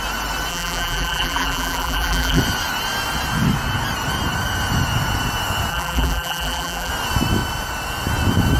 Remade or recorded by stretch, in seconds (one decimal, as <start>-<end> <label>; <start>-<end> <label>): 0.0-0.5 recorded; 0.5-2.4 remade; 2.4-5.7 recorded; 5.7-6.9 remade; 6.9-8.6 recorded